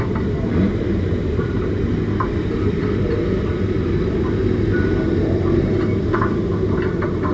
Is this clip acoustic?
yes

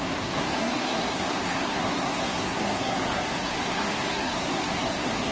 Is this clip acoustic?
no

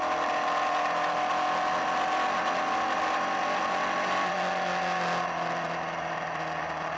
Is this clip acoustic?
yes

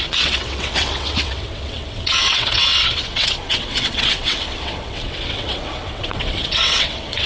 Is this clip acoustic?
no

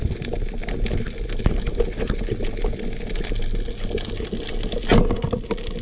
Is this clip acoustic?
yes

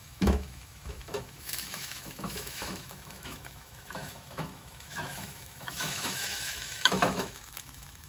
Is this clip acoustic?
no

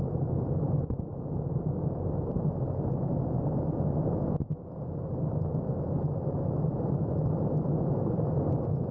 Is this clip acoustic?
yes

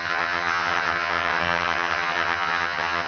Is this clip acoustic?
no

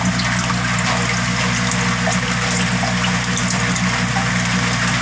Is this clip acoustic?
yes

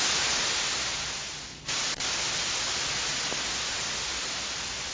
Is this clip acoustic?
yes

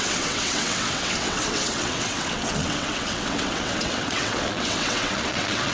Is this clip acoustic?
no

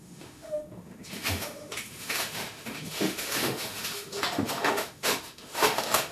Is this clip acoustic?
no